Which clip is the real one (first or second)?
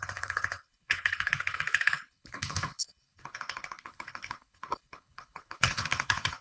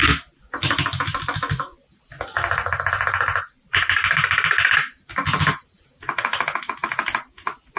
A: second